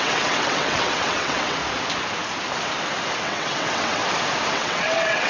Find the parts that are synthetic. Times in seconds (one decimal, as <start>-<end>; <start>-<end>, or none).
0.0-1.6; 3.2-4.0; 4.5-5.3

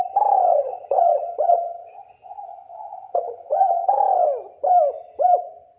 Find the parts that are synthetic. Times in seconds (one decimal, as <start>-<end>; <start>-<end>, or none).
0.5-4.0

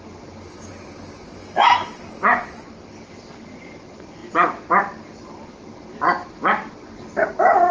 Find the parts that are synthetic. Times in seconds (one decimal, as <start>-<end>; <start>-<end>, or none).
1.4-2.0

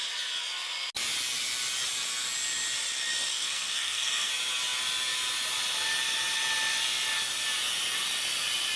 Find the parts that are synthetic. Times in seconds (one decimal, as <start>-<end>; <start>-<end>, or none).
3.3-4.3